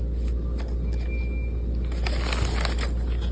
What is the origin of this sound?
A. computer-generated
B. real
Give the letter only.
B